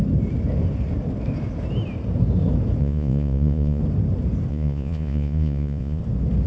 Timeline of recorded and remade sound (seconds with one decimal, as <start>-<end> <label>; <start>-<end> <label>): 0.0-2.8 recorded; 2.8-3.8 remade; 3.8-4.5 recorded; 4.5-6.0 remade; 6.0-6.5 recorded